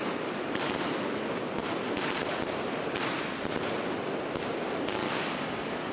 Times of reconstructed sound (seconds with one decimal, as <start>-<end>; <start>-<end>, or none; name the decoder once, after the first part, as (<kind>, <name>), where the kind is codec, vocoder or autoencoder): none